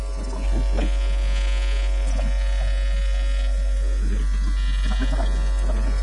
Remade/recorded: recorded